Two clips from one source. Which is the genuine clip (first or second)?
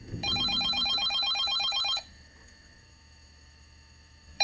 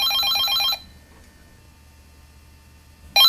second